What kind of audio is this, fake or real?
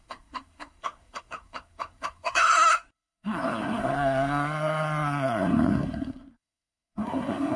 fake